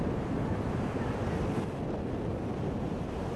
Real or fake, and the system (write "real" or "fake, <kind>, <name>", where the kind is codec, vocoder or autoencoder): real